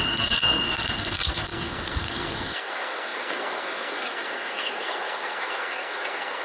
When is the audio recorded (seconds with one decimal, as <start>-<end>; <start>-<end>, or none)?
none